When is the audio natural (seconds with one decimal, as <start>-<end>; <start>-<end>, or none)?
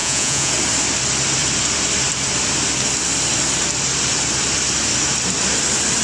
0.5-6.0